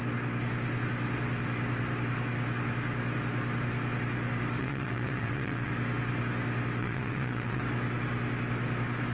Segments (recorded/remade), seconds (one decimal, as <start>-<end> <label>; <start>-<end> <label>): 0.0-4.6 recorded; 4.6-5.7 remade; 5.7-6.8 recorded; 6.8-7.6 remade; 7.6-9.1 recorded